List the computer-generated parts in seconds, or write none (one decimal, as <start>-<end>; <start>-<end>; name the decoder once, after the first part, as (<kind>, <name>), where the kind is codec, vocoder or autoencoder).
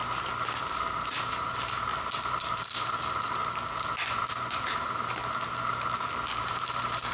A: 1.3-1.9 (vocoder, BigVGAN v2); 2.4-3.4; 4.8-5.2; 6.4-7.1